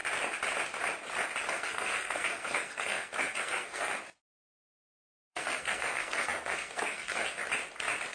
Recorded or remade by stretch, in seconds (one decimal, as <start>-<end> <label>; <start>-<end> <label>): 0.0-1.5 recorded; 1.5-3.9 remade; 3.9-4.8 recorded; 4.8-7.4 remade; 7.4-8.1 recorded